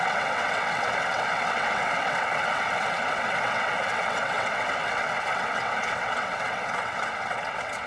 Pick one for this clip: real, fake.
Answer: fake